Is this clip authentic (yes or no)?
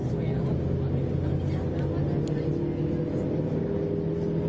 yes